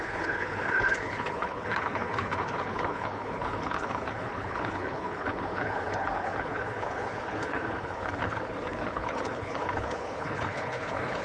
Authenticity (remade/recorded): remade